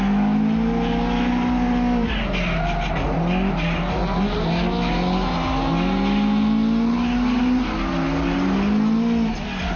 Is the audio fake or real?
real